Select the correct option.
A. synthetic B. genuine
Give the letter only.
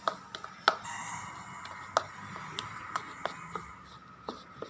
B